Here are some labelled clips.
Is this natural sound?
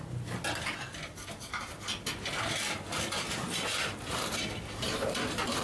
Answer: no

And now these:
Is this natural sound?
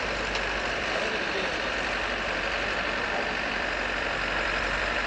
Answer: no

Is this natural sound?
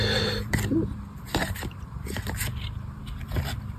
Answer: no